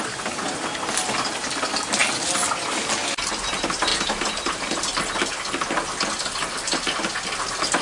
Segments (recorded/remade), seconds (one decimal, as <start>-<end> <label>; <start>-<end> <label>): 0.0-3.9 recorded; 3.9-5.0 remade; 5.0-7.8 recorded